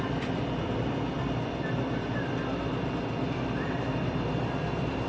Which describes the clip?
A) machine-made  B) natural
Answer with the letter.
A